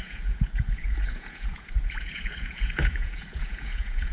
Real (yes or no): no